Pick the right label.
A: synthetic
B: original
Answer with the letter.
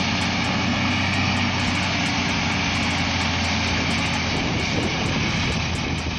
B